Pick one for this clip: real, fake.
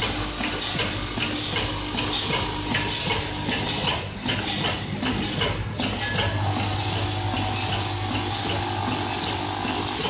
real